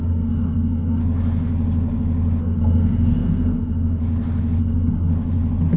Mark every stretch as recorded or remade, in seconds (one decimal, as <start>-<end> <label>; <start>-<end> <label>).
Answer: 0.0-1.0 remade; 1.0-2.4 recorded; 2.4-4.0 remade; 4.0-4.6 recorded; 4.6-5.1 remade; 5.1-5.8 recorded